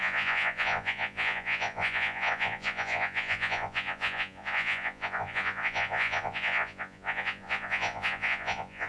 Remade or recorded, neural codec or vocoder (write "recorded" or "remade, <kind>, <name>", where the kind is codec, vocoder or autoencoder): remade, vocoder, Vocos